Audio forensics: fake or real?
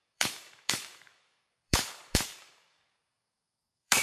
fake